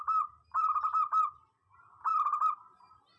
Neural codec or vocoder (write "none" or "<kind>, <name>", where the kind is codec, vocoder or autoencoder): none